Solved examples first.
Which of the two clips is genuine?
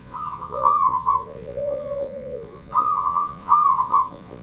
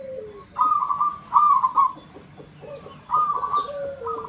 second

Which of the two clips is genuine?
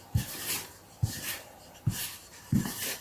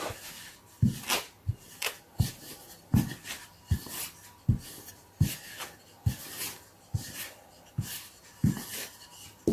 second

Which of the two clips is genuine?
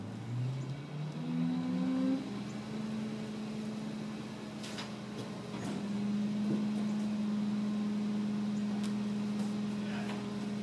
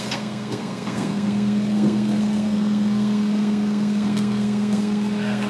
first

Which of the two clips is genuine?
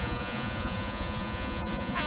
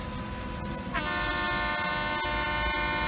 second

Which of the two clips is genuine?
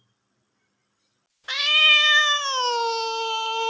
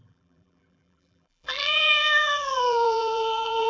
first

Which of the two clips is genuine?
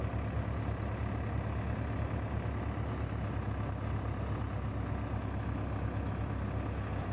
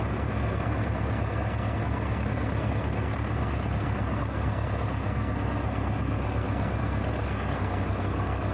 first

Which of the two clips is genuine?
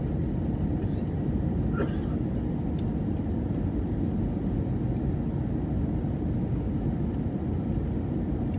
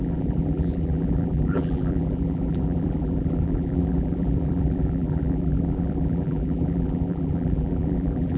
first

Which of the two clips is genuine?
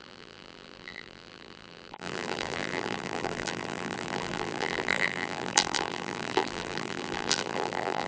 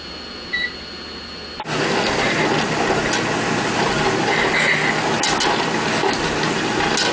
second